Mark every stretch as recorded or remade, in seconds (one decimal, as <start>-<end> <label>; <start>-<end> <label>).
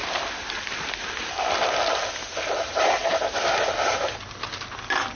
0.0-5.1 recorded